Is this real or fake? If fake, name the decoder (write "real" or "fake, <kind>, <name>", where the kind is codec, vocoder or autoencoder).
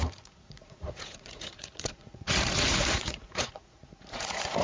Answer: fake, vocoder, Vocos